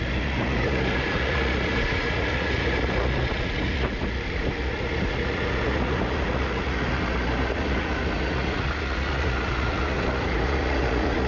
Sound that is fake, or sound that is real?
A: fake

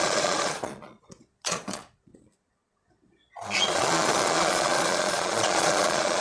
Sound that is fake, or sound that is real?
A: fake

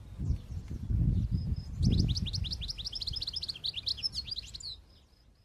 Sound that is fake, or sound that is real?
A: real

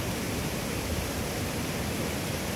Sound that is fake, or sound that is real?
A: real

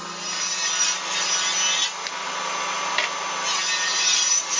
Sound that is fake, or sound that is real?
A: real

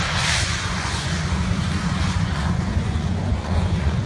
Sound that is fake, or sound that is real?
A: fake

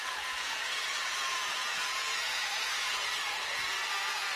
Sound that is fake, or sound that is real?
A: fake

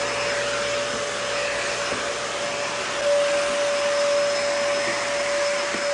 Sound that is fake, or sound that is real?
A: real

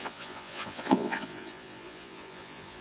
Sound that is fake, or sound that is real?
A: fake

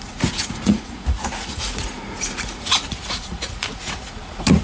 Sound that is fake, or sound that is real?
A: fake